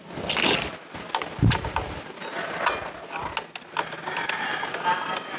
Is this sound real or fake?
real